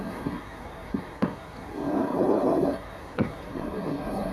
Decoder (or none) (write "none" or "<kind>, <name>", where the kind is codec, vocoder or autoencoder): codec, SNAC